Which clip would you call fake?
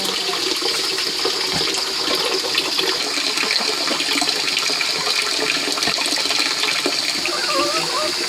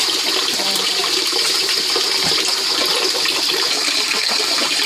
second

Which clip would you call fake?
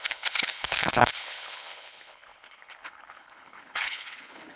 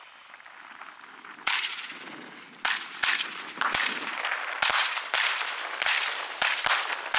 first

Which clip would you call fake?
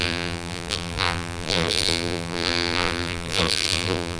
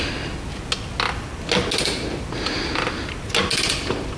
first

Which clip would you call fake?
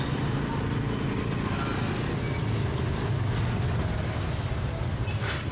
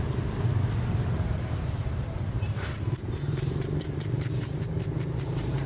second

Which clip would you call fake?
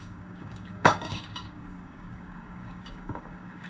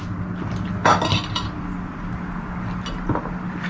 first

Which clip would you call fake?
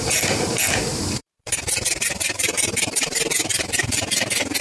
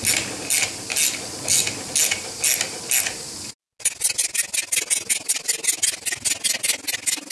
first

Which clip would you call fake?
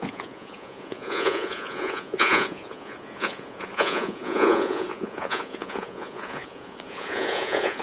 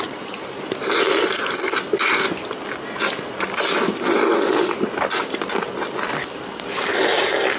first